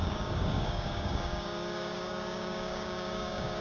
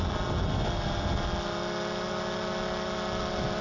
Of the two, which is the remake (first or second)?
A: first